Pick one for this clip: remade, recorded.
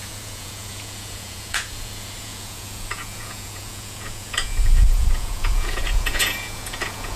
remade